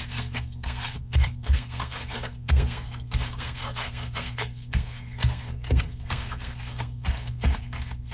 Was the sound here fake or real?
fake